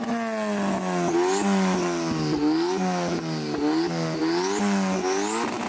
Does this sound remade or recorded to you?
recorded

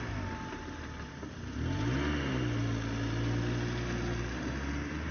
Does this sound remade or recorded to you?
recorded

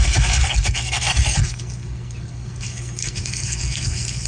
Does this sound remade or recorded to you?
remade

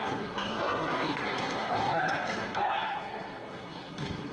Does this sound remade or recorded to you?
remade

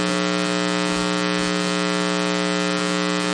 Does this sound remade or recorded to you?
recorded